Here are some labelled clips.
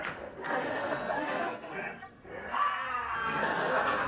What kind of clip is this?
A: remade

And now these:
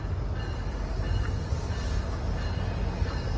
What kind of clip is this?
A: recorded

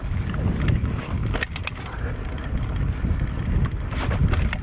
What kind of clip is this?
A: recorded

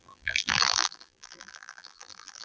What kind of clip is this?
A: remade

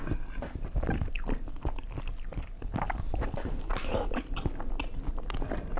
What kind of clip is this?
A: recorded